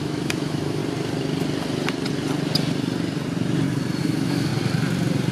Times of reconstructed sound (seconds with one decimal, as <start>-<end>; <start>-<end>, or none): 0.0-0.8; 4.0-4.5